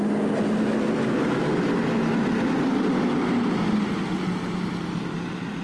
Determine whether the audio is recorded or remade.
recorded